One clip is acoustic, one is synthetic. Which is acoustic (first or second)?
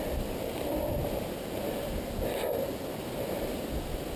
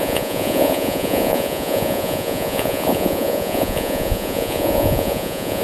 first